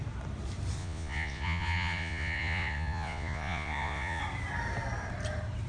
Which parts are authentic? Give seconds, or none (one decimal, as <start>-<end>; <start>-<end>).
0.0-0.8; 4.2-5.7